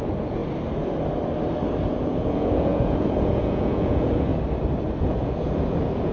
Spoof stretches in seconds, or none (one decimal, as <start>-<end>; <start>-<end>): 0.0-0.4; 1.9-4.3; 5.0-6.1